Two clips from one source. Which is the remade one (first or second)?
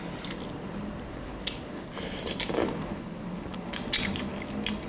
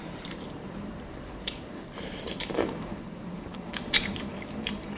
second